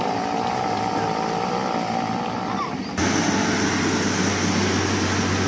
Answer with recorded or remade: recorded